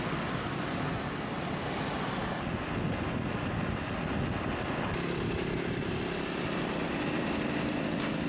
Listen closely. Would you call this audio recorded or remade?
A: recorded